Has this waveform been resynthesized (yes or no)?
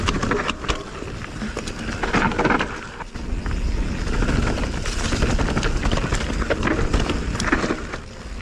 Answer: no